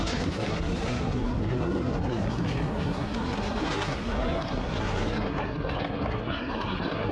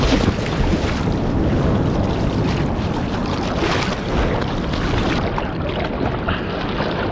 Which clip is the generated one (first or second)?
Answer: first